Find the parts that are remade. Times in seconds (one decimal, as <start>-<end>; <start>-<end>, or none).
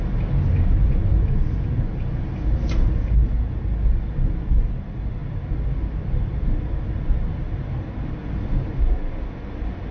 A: none